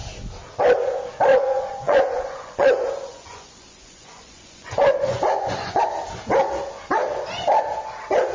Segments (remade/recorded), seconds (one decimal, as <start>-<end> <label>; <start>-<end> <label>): 0.0-1.3 recorded; 1.3-5.8 remade; 5.8-8.3 recorded